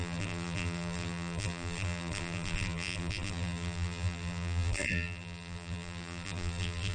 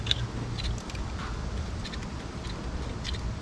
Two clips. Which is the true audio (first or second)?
second